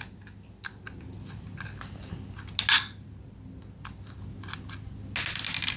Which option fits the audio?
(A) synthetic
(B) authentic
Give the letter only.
B